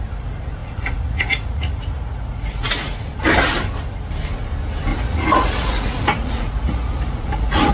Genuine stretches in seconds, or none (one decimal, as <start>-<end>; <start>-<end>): 0.0-0.6; 3.0-4.9